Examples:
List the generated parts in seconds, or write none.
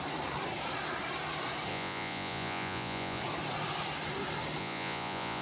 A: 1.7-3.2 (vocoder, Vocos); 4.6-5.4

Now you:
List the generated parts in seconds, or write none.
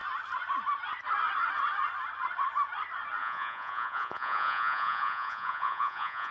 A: 3.2-6.3 (vocoder, Vocos)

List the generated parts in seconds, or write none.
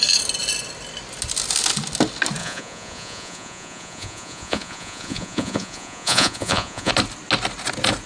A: 2.4-6.9 (vocoder, Vocos)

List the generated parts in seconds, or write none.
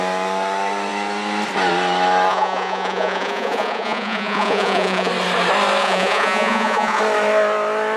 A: 2.3-5.1 (vocoder, Vocos); 5.8-7.0